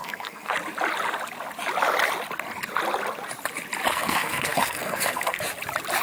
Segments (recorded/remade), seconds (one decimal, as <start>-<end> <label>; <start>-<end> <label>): 0.0-0.5 remade; 0.5-3.9 recorded; 3.9-5.4 remade; 5.4-6.0 recorded